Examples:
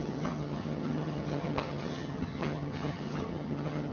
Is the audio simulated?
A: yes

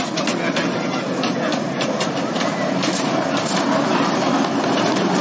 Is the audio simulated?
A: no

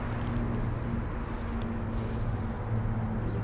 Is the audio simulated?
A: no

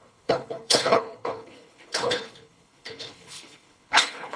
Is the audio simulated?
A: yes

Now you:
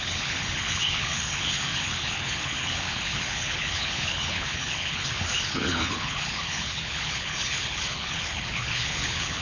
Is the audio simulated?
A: yes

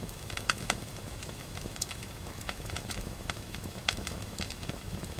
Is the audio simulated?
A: yes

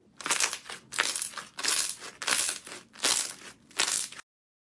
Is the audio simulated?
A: no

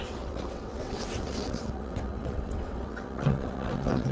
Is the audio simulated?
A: yes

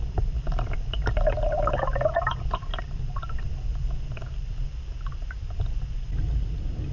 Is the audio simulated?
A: no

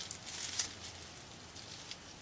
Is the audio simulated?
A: no